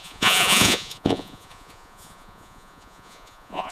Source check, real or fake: fake